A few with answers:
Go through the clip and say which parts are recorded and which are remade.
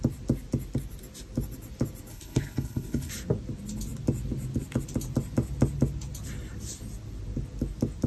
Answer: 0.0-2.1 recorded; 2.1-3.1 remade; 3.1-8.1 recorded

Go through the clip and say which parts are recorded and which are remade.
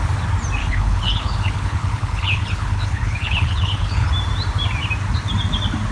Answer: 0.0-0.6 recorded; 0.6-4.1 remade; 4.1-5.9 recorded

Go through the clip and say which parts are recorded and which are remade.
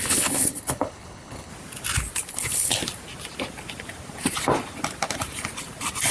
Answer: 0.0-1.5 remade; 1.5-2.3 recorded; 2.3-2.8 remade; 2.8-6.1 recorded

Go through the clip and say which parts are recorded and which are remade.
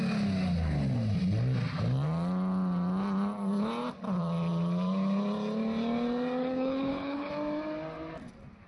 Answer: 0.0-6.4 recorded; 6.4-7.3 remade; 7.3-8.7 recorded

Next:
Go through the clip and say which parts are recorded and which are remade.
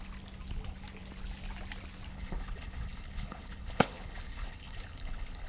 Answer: 0.0-2.1 recorded; 2.1-5.5 remade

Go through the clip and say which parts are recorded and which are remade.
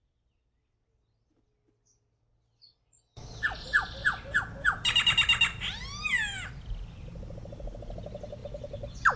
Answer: 0.0-9.2 recorded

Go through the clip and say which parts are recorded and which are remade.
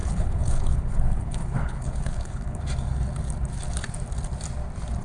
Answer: 0.0-2.6 remade; 2.6-5.0 recorded